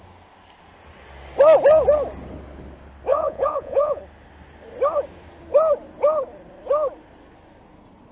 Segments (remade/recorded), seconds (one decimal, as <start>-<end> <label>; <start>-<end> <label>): 0.0-3.1 recorded; 3.1-4.0 remade; 4.0-8.1 recorded